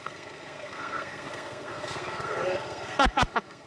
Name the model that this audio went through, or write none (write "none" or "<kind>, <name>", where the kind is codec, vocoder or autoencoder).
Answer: codec, SNAC